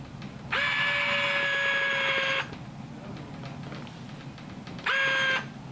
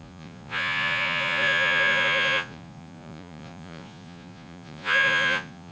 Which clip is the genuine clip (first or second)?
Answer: first